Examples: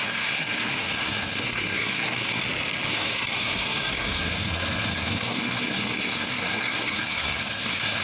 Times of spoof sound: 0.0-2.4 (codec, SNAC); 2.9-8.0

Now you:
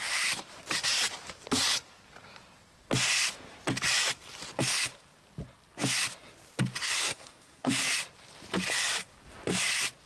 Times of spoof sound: 6.8-7.7 (codec, SNAC)

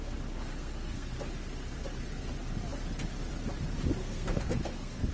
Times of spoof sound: 0.5-1.2 (codec, SNAC); 4.0-5.1

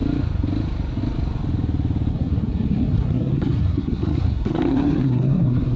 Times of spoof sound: 2.1-5.8 (codec, SNAC)